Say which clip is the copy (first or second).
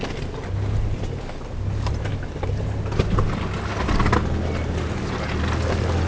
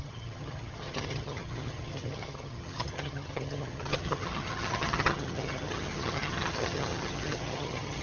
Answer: second